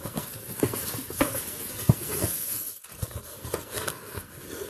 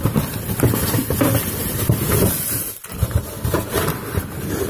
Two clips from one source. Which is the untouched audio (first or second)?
second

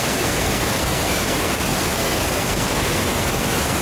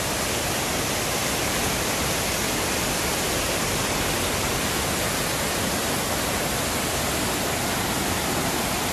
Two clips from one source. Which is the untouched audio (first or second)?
second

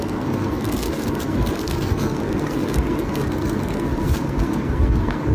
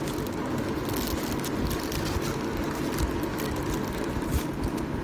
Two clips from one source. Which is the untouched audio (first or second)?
second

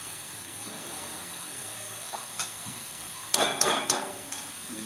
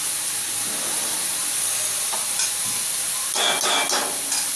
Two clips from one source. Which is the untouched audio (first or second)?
second